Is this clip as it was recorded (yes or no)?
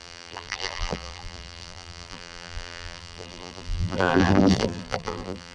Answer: no